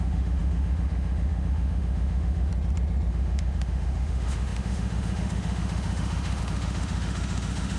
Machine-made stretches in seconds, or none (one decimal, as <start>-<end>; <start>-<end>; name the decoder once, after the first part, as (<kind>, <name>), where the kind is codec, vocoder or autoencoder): 0.0-2.5 (autoencoder, DAC-VAE); 3.1-7.8

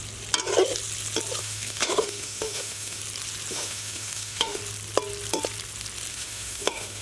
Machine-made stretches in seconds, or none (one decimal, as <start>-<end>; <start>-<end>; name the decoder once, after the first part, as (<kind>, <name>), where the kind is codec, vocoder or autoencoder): 1.4-3.0 (autoencoder, DAC-VAE); 3.5-4.6; 6.1-7.0

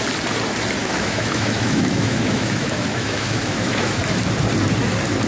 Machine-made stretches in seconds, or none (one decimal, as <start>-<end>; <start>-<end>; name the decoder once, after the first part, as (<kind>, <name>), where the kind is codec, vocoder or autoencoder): 0.8-4.0 (autoencoder, DAC-VAE)

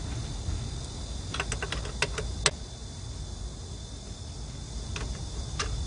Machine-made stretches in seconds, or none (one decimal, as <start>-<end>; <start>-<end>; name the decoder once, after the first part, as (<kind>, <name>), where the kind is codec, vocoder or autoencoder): none